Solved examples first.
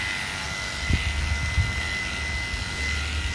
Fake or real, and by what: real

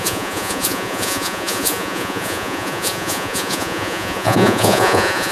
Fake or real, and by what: fake, vocoder, Vocos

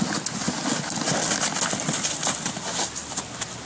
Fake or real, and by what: real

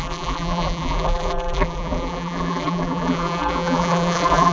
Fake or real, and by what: fake, vocoder, BigVGAN v2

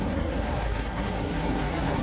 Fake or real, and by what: fake, codec, SNAC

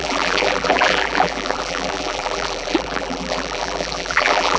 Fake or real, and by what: fake, vocoder, BigVGAN v2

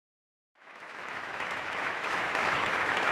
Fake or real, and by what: fake, autoencoder, DAC-VAE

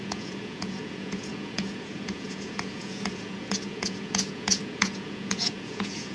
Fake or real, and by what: fake, vocoder, Vocos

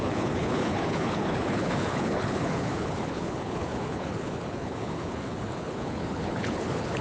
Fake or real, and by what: fake, codec, HILCodec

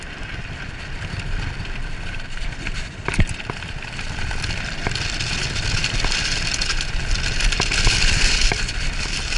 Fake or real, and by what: fake, vocoder, BigVGAN v2